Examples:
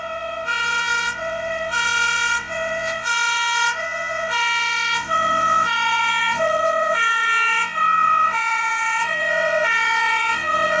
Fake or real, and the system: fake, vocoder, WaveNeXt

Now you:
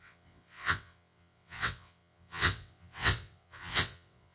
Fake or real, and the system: fake, vocoder, WaveNeXt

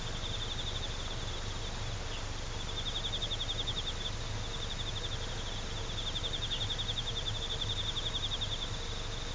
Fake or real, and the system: real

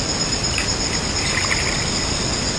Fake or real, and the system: real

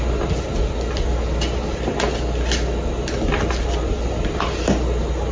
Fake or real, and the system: real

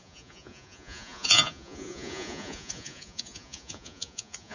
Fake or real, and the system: fake, vocoder, Vocos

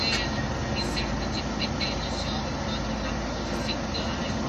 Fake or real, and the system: real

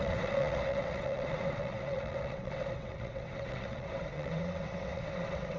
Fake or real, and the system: fake, vocoder, WaveNeXt